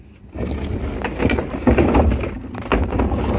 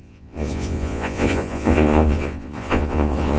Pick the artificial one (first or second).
second